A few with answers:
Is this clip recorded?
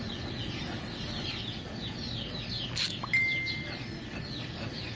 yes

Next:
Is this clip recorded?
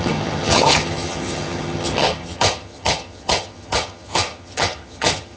no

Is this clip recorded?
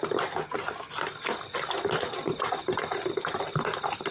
yes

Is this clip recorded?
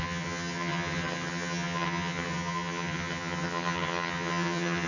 no